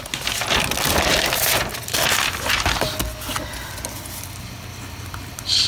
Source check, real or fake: real